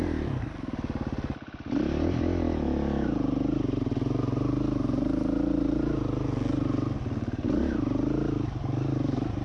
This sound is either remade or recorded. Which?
recorded